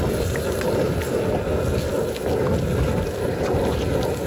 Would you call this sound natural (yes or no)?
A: yes